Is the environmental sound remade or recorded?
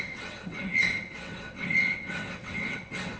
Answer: remade